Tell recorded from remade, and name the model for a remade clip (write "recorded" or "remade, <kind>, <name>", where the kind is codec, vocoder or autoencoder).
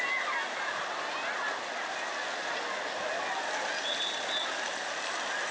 recorded